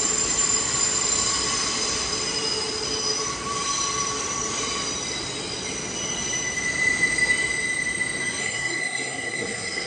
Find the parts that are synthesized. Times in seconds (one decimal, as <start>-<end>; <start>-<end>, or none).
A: 8.4-9.9